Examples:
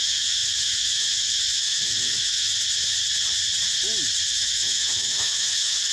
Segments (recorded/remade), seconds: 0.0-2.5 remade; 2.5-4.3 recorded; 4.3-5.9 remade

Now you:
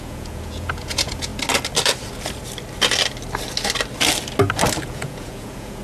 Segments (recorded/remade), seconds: 0.0-1.3 remade; 1.3-4.8 recorded; 4.8-5.8 remade

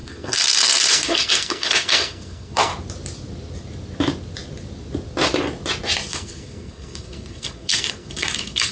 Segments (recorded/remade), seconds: 0.0-2.7 remade; 2.7-6.1 recorded; 6.1-8.7 remade